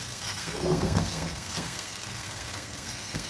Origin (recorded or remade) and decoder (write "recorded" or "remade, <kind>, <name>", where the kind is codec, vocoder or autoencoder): remade, codec, SNAC